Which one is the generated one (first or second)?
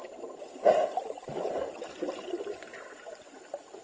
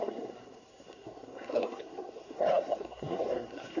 second